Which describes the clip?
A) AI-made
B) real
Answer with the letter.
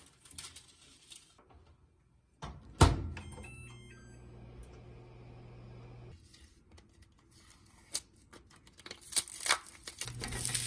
B